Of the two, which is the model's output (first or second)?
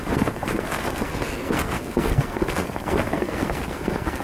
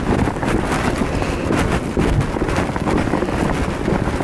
first